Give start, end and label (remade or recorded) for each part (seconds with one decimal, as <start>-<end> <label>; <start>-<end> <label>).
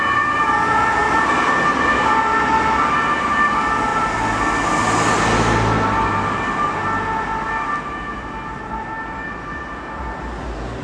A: 0.0-10.8 recorded